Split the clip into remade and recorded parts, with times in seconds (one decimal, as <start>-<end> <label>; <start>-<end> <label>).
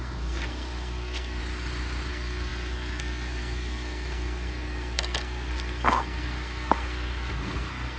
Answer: 0.0-1.4 remade; 1.4-2.1 recorded; 2.1-8.0 remade